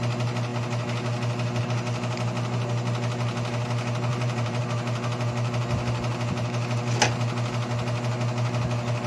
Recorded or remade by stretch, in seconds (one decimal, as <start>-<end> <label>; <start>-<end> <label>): 0.0-4.1 recorded; 4.1-4.6 remade; 4.6-9.1 recorded